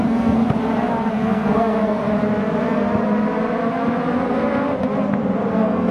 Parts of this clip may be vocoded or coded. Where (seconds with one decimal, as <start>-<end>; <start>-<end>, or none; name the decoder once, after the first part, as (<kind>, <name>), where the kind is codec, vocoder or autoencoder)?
0.0-0.4 (codec, SNAC); 1.1-2.0; 5.5-5.9